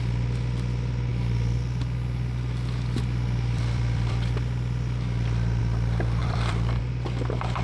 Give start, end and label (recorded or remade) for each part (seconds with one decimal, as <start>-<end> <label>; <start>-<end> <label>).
0.0-1.1 recorded; 1.1-5.6 remade; 5.6-6.2 recorded; 6.2-6.8 remade; 6.8-7.6 recorded